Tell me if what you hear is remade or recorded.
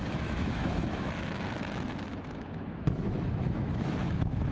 remade